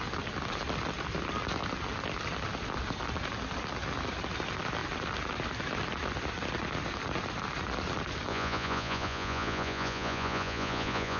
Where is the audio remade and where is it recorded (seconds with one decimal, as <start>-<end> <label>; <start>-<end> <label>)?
0.0-8.3 recorded; 8.3-11.2 remade